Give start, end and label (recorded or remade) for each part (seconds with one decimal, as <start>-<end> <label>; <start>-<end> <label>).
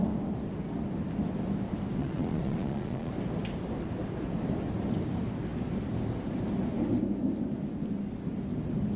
0.0-2.0 recorded; 2.0-3.1 remade; 3.1-9.0 recorded